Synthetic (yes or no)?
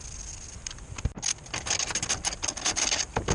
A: no